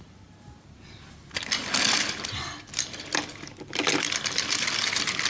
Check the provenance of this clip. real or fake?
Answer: real